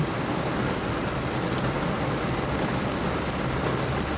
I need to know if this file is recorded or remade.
recorded